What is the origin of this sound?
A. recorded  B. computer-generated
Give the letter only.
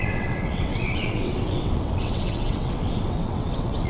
B